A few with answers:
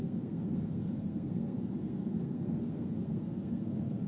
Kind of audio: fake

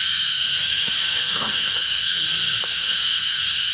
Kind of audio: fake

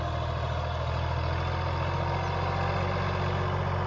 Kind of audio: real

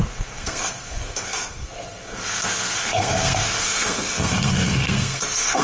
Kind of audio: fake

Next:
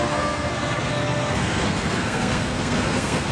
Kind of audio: fake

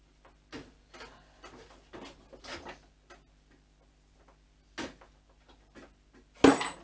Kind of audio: real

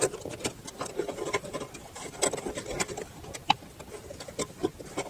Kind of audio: real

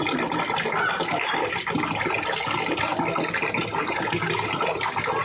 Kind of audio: real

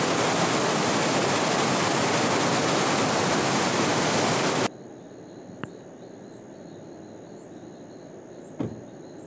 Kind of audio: real